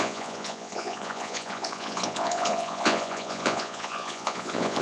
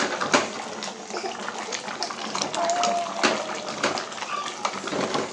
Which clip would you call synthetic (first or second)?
first